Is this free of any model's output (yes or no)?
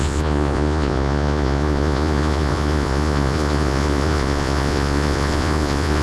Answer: no